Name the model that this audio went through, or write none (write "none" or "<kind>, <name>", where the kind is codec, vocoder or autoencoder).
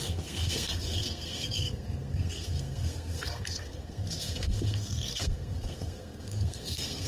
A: codec, SNAC